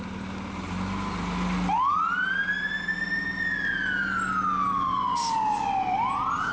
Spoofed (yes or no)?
no